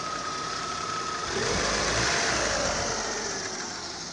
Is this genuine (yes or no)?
yes